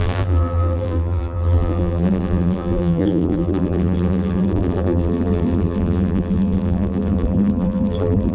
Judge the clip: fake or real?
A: fake